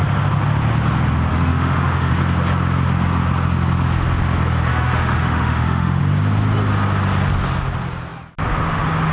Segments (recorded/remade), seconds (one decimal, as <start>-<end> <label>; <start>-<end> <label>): 0.0-1.3 recorded; 1.3-2.1 remade; 2.1-4.7 recorded; 4.7-6.0 remade; 6.0-9.1 recorded